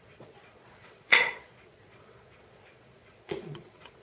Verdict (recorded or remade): remade